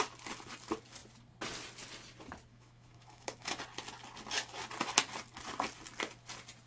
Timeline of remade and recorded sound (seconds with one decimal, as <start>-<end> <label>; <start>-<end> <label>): 0.0-2.5 recorded; 2.5-3.6 remade; 3.6-6.7 recorded